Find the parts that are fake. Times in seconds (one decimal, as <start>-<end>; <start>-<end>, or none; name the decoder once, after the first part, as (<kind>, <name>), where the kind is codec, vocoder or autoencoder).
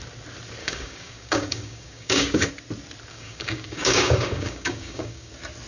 0.6-2.5 (codec, DAC); 3.1-5.3